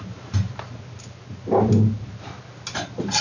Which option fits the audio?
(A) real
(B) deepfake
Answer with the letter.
A